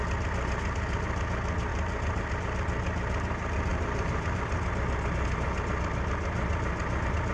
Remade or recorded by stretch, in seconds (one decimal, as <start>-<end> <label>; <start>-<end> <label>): 0.0-1.7 recorded; 1.7-2.3 remade; 2.3-3.7 recorded; 3.7-4.5 remade; 4.5-7.3 recorded